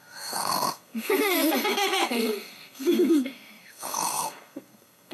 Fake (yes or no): yes